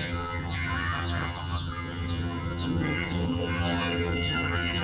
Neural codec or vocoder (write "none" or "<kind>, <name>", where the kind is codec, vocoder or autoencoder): vocoder, HiFi-GAN